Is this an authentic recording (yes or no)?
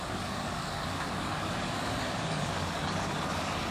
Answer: no